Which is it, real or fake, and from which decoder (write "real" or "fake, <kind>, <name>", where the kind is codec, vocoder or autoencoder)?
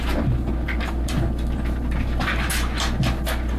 real